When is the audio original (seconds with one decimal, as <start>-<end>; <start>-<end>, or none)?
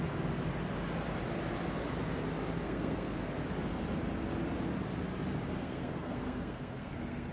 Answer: 0.0-2.6; 3.2-5.6